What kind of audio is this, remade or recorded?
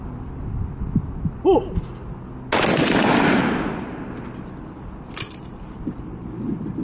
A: recorded